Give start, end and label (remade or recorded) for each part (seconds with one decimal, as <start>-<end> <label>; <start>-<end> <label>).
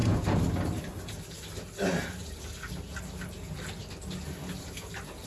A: 0.0-5.3 recorded